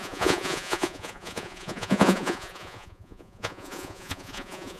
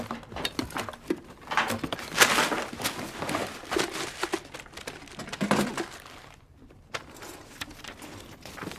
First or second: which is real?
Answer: second